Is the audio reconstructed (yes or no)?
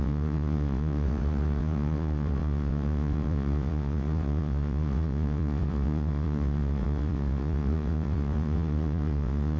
yes